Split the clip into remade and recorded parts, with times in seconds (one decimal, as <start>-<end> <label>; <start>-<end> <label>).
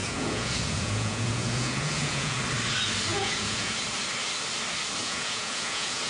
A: 0.0-2.4 remade; 2.4-3.1 recorded; 3.1-3.7 remade; 3.7-5.0 recorded; 5.0-6.1 remade